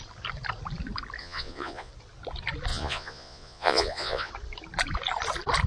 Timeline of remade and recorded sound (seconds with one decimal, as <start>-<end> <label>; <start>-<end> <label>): 0.0-1.2 recorded; 1.2-1.9 remade; 1.9-2.7 recorded; 2.7-4.3 remade; 4.3-5.7 recorded